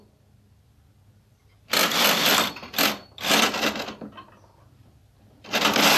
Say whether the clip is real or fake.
real